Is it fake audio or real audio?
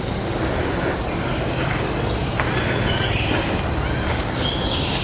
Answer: real